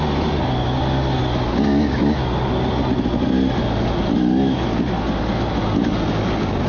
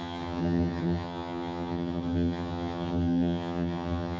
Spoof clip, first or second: second